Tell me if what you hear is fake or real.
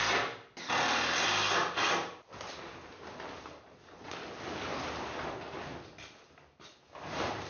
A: real